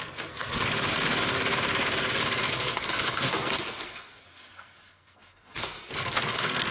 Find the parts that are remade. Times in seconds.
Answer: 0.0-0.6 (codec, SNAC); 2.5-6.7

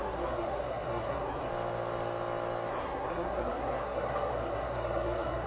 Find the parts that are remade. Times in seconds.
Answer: 0.0-1.5 (codec, SNAC); 2.7-5.5

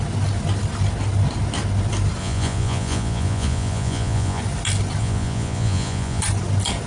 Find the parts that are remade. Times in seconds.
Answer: 2.2-4.4 (vocoder, Vocos); 5.0-6.2

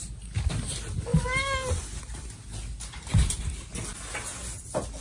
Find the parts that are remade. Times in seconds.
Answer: none

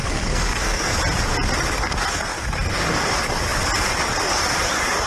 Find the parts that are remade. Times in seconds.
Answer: 0.0-0.9 (codec, SNAC)